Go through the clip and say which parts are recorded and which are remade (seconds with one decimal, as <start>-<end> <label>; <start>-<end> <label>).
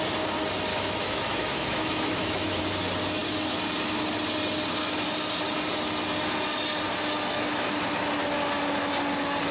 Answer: 0.0-0.7 recorded; 0.7-2.6 remade; 2.6-9.5 recorded